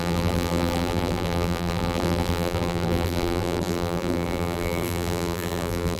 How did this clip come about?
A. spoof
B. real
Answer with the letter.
A